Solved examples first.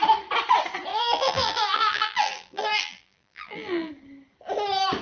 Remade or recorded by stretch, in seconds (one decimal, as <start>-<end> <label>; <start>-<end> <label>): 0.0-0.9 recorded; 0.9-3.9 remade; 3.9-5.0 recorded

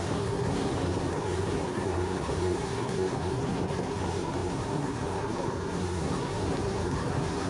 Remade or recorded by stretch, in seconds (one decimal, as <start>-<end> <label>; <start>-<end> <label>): 0.0-7.5 remade

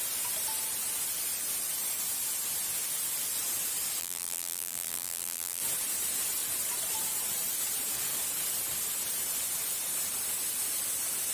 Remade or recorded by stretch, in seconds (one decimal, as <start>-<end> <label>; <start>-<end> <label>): 0.0-4.0 recorded; 4.0-5.6 remade; 5.6-11.3 recorded